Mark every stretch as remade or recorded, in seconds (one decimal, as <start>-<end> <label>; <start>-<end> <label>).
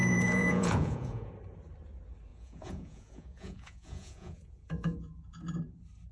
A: 0.0-1.3 remade; 1.3-2.3 recorded; 2.3-5.4 remade; 5.4-6.1 recorded